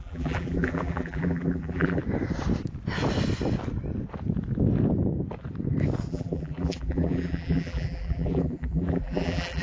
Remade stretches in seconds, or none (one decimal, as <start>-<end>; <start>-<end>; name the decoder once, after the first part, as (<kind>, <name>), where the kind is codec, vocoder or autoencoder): 0.0-2.0 (vocoder, BigVGAN v2); 6.1-9.6